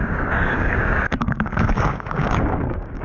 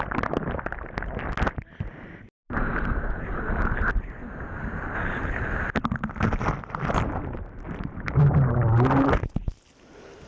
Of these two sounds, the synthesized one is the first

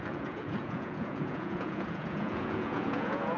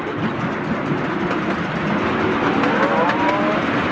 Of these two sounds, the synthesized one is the first